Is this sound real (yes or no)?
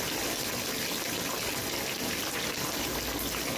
yes